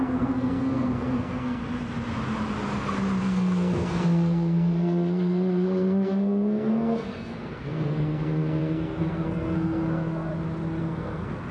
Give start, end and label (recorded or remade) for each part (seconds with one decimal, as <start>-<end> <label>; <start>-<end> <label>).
0.0-1.6 remade; 1.6-3.2 recorded; 3.2-10.3 remade; 10.3-10.8 recorded; 10.8-11.5 remade